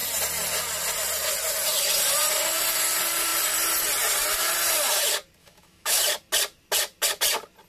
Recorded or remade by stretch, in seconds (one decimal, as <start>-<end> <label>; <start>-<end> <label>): 0.0-5.4 recorded; 5.4-6.0 remade; 6.0-7.7 recorded